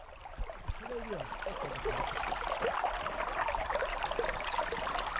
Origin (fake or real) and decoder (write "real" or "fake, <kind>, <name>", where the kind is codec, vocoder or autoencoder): real